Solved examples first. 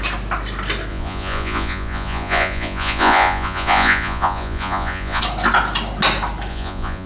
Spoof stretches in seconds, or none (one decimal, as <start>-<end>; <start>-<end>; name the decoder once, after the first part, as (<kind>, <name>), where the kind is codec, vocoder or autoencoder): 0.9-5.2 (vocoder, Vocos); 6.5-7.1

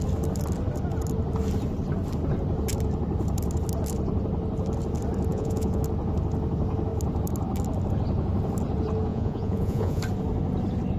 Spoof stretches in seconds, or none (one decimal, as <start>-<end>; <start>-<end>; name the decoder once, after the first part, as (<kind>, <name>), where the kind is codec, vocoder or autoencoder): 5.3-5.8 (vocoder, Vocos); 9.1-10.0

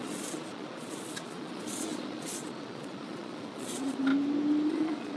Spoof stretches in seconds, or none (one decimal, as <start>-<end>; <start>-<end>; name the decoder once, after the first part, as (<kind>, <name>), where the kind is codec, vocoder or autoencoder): 0.0-4.1 (vocoder, Vocos); 4.7-5.2

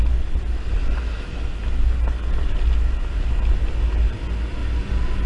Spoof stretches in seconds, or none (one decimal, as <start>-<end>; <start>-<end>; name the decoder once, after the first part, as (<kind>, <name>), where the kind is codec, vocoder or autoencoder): none

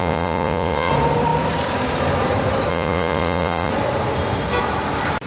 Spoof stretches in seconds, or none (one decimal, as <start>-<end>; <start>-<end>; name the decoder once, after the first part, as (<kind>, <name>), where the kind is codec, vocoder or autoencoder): 0.0-0.9 (vocoder, Vocos); 2.7-3.7